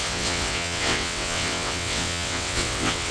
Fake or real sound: fake